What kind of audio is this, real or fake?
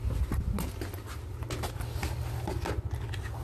real